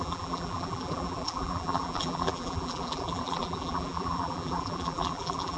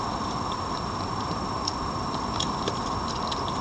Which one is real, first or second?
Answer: second